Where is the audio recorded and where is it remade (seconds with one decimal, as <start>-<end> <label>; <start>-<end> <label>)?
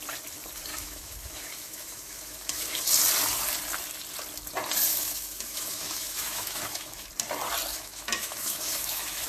0.0-0.7 recorded; 0.7-2.8 remade; 2.8-4.9 recorded; 4.9-7.1 remade; 7.1-7.7 recorded; 7.7-9.3 remade